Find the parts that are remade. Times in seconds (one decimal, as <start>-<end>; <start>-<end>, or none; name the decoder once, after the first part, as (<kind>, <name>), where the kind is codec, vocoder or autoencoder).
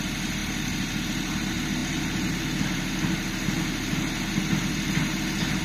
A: none